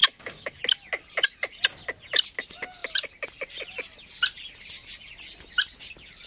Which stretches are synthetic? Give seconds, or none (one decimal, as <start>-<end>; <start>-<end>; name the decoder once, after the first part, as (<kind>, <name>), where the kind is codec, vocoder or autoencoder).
0.0-0.6 (autoencoder, DAC-VAE)